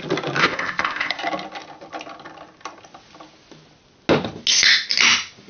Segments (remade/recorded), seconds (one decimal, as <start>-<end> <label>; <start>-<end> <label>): 0.0-0.4 recorded; 0.4-1.2 remade; 1.2-5.5 recorded